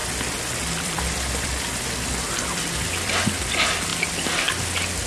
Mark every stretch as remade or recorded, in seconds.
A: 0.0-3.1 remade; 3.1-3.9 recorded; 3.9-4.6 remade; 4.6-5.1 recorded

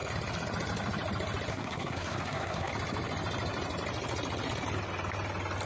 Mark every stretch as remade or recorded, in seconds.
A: 0.0-1.5 recorded; 1.5-2.7 remade; 2.7-5.7 recorded

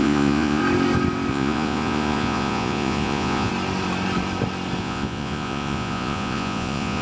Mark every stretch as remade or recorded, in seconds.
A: 0.0-0.6 remade; 0.6-1.3 recorded; 1.3-3.5 remade; 3.5-4.8 recorded; 4.8-7.0 remade